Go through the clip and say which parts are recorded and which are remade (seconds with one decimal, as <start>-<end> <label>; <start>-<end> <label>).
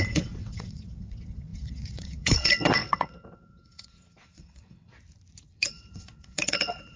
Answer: 0.0-4.9 remade; 4.9-5.7 recorded; 5.7-7.0 remade